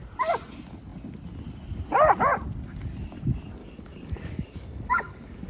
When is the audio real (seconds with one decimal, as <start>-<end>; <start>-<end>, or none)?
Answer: 0.0-3.6